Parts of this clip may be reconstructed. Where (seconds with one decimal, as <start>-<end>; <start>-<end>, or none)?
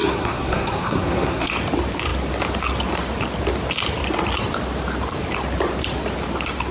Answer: 0.0-1.5